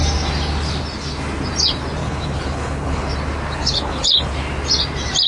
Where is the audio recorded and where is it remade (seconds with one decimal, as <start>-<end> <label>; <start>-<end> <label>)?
0.0-2.0 recorded; 2.0-3.1 remade; 3.1-3.6 recorded; 3.6-4.3 remade; 4.3-5.3 recorded